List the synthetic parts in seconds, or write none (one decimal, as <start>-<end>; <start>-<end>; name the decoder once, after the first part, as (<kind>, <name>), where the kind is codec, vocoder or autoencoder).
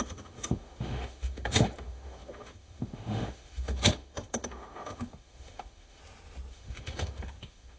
0.0-6.0 (autoencoder, DAC-VAE); 6.5-7.8